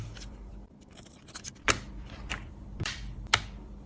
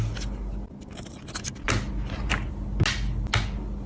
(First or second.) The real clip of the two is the second